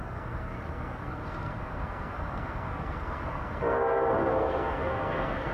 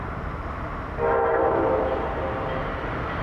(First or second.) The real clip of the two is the second